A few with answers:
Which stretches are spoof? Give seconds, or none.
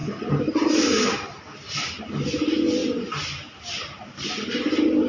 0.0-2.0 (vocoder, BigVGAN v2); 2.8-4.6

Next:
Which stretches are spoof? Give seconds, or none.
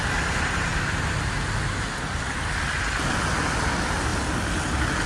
none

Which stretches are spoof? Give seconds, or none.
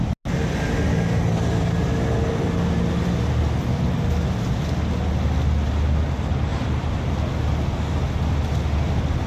6.5-7.3 (vocoder, BigVGAN v2)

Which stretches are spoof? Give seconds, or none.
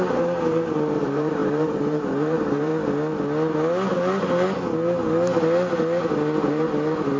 0.0-2.7 (vocoder, BigVGAN v2); 6.0-7.2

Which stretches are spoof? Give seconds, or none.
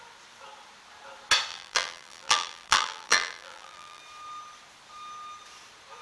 1.5-4.0 (vocoder, BigVGAN v2)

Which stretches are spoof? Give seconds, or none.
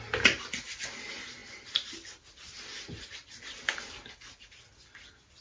none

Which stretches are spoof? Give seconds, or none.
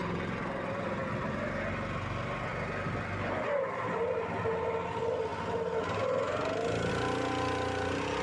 none